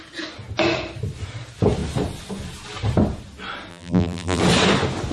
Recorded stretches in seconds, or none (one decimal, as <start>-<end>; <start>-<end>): 0.0-3.7; 4.4-5.1